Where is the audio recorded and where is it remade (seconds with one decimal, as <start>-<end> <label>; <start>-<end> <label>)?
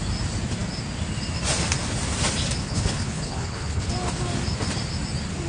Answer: 0.0-2.6 recorded; 2.6-3.9 remade; 3.9-5.5 recorded